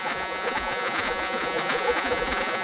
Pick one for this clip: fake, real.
fake